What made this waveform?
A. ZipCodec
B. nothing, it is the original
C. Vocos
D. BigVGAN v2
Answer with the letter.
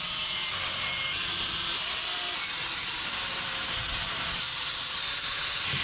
D